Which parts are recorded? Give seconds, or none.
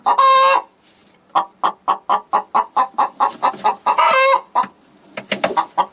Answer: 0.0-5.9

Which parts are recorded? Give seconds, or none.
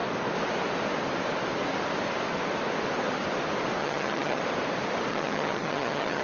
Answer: 0.0-3.8; 4.4-5.1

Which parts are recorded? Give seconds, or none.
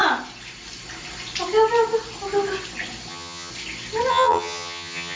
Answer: 0.0-3.1; 3.5-4.1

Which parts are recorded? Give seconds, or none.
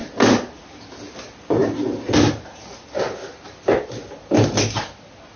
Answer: 0.0-5.4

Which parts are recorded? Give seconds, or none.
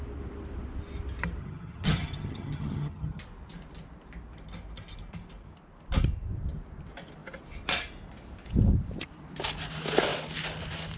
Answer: 0.0-1.4; 3.2-11.0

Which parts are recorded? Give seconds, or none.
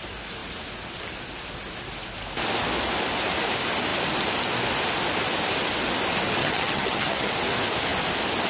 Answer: 0.0-6.4; 7.3-8.5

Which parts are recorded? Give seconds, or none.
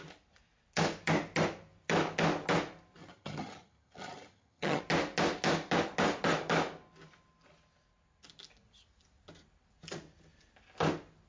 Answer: 0.0-3.0; 4.8-11.3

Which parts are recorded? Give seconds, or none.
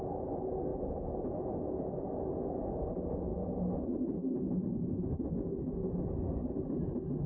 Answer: 0.0-7.3